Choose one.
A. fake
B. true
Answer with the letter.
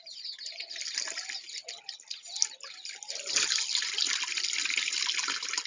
B